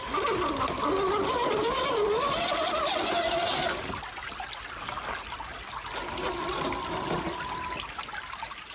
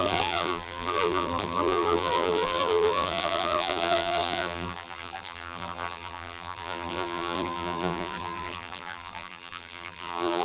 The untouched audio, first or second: first